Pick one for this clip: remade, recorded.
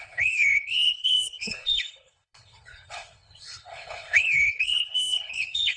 remade